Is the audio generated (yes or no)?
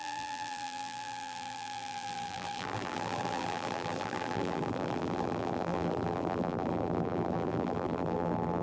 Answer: yes